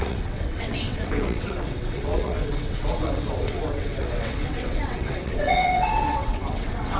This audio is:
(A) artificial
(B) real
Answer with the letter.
A